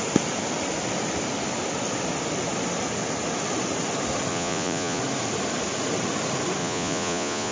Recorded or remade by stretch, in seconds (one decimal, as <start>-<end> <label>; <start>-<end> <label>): 0.0-4.3 recorded; 4.3-5.0 remade; 5.0-6.6 recorded; 6.6-7.5 remade